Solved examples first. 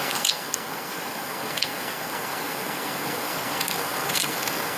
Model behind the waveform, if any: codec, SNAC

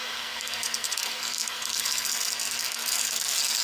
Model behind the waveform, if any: codec, SNAC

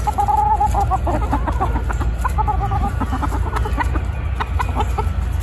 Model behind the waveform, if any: none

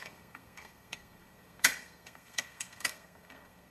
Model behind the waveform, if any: codec, SNAC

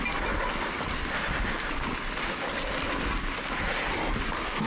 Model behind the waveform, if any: none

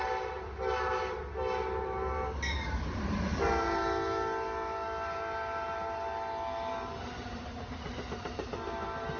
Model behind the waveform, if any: none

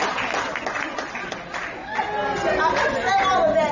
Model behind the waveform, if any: none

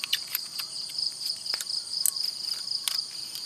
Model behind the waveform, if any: none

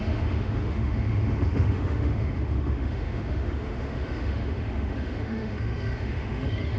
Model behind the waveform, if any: autoencoder, DAC-VAE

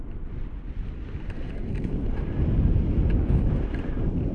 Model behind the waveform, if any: none